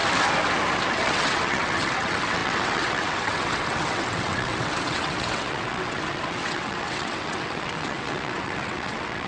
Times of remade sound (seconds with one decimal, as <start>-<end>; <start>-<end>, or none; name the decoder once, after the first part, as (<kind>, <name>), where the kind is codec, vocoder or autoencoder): 0.9-9.3 (vocoder, WaveNeXt)